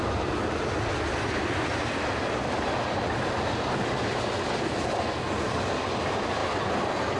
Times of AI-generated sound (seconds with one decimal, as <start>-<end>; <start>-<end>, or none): none